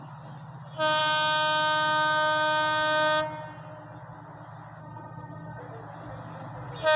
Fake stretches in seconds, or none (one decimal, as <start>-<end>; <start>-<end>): 4.8-5.6